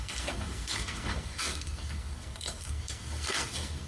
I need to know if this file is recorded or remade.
remade